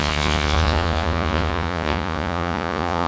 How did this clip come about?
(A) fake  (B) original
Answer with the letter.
A